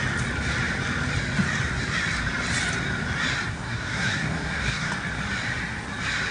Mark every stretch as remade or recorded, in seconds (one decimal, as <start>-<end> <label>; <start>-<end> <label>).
0.0-3.5 recorded; 3.5-4.9 remade; 4.9-6.3 recorded